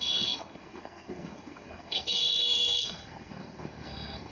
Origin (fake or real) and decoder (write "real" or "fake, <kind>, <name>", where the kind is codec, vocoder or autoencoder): fake, codec, SNAC